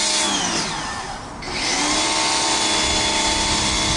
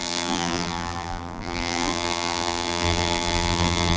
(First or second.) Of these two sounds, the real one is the first